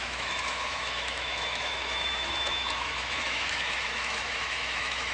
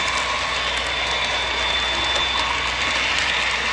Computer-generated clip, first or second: first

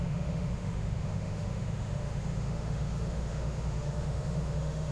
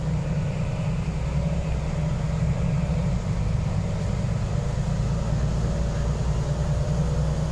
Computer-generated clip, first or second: first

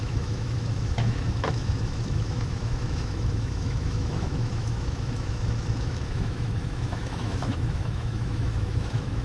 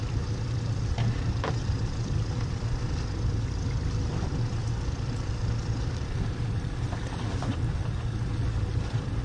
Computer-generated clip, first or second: first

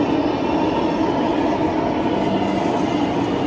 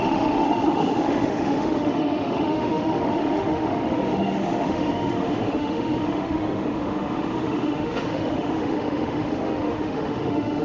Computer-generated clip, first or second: second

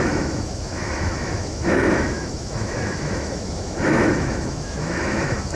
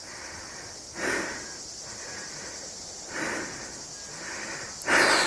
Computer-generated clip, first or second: first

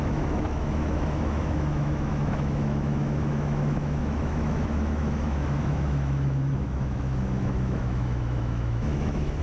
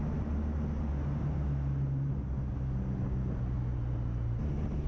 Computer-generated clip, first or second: first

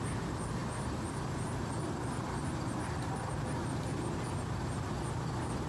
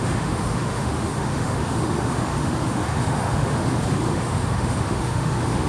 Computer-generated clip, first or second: second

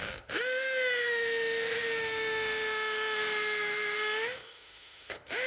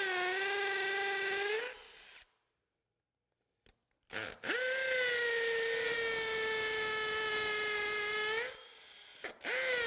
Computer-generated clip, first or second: first